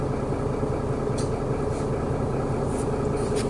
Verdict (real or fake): real